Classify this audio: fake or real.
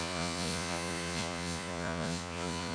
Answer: fake